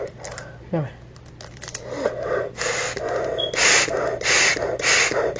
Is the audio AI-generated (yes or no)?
no